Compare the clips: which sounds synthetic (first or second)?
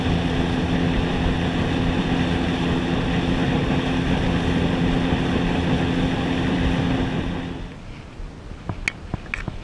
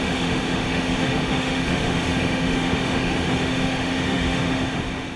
second